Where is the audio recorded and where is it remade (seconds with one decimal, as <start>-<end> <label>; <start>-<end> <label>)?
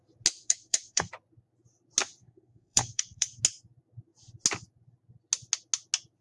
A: 0.0-0.4 recorded; 0.4-1.1 remade; 1.1-2.2 recorded; 2.2-3.4 remade; 3.4-6.2 recorded